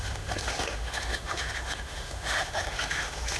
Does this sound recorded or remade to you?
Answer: remade